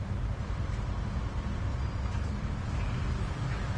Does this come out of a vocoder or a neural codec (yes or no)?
no